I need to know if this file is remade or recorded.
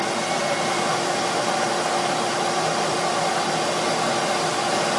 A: recorded